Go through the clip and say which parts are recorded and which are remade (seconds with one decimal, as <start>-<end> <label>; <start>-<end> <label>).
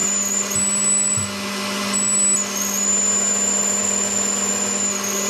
0.0-5.3 recorded